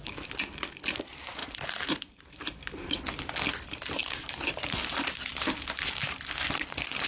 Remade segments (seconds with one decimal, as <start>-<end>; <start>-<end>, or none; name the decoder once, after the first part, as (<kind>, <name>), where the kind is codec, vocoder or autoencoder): 1.4-2.6 (vocoder, BigVGAN v2); 4.0-7.1